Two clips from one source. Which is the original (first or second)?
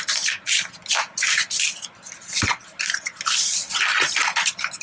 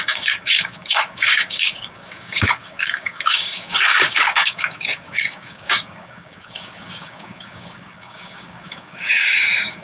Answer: first